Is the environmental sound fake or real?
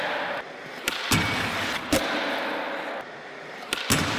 real